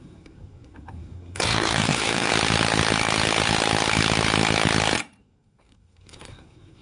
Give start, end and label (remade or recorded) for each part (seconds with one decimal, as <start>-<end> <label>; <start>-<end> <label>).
0.0-2.3 remade; 2.3-5.2 recorded; 5.2-6.8 remade